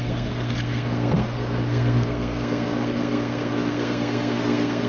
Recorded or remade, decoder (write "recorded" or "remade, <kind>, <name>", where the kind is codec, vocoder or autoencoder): remade, codec, SNAC